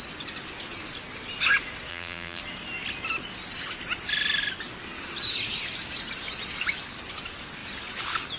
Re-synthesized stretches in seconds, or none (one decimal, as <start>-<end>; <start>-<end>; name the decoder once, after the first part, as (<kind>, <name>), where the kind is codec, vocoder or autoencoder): 1.9-2.4 (vocoder, BigVGAN v2)